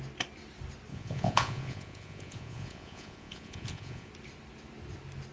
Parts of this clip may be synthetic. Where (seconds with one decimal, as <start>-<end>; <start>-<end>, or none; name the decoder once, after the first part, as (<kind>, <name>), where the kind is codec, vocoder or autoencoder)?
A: 0.9-4.1 (vocoder, Vocos)